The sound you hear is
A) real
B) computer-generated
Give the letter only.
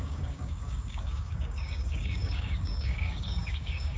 B